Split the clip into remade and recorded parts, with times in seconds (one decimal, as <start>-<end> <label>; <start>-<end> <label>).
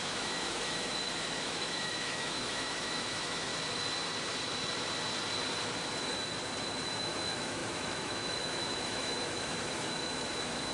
0.0-3.5 remade; 3.5-6.8 recorded; 6.8-10.7 remade